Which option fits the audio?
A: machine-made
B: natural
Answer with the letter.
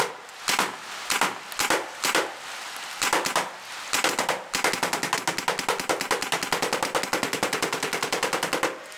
B